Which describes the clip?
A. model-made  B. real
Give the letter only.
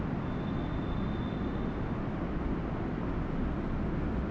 B